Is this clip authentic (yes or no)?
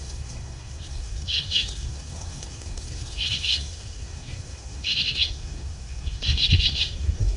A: no